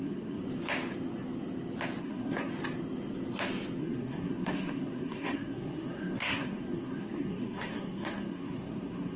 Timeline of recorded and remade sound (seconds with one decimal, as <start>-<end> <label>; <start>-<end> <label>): 0.0-0.4 remade; 0.4-2.0 recorded; 2.0-2.5 remade; 2.5-3.8 recorded; 3.8-9.2 remade